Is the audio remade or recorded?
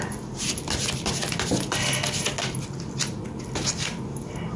recorded